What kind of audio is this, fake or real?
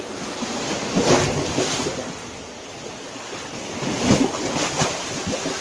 real